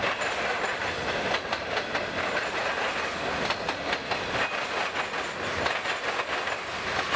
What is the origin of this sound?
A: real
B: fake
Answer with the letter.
A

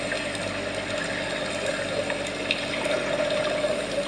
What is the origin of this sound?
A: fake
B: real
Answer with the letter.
B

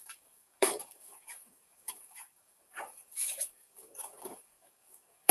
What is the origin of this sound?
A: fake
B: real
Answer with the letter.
A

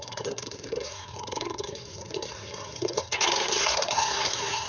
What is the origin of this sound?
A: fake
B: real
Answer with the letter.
A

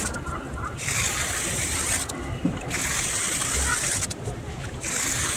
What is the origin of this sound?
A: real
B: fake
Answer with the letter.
A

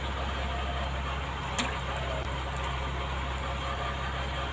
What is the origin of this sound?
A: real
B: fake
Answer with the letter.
A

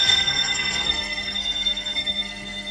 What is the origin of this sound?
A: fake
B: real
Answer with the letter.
A